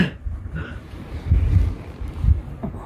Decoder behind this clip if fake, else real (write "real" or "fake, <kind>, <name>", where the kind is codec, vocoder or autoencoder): real